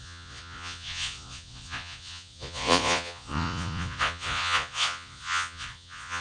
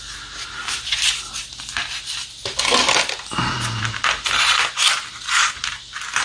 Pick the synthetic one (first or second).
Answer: first